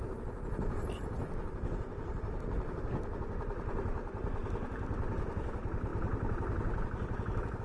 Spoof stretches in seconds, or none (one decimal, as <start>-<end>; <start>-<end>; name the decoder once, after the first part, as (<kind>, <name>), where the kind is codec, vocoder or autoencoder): none